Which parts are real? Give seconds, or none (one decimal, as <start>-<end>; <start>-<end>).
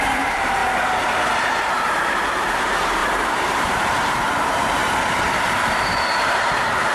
0.6-1.4; 4.8-5.3